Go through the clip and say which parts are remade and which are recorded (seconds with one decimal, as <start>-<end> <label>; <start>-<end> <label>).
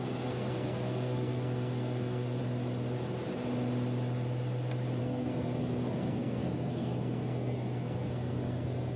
0.0-2.4 remade; 2.4-5.0 recorded; 5.0-9.0 remade